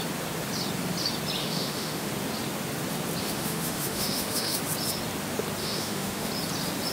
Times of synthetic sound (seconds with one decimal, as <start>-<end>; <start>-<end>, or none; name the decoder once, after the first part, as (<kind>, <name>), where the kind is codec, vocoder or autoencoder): 1.4-2.1 (autoencoder, DAC-VAE); 3.2-4.6; 5.6-6.3